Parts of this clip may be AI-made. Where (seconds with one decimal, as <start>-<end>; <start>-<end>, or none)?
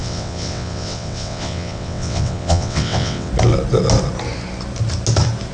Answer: 0.0-3.3